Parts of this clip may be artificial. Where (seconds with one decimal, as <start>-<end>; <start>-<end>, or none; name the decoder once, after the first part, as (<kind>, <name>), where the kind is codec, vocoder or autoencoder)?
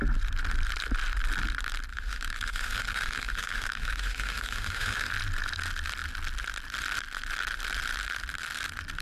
1.9-5.1 (autoencoder, DAC-VAE)